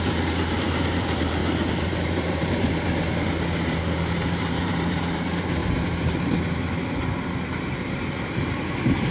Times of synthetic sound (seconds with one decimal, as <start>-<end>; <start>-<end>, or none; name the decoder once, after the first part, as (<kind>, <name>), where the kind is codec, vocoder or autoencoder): 0.0-9.1 (vocoder, BigVGAN v2)